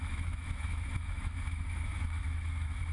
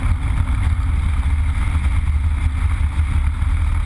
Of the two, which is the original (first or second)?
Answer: second